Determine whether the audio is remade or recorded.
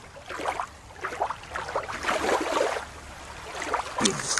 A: recorded